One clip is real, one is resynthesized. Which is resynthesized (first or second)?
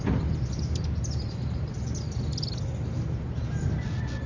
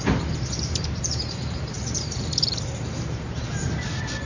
second